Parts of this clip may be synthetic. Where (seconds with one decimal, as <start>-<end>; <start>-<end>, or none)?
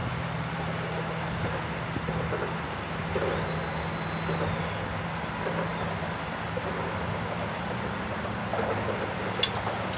none